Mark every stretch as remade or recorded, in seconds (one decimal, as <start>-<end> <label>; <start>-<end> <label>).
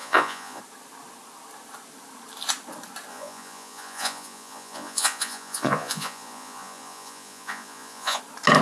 0.0-0.6 remade; 0.6-3.1 recorded; 3.1-8.2 remade; 8.2-8.6 recorded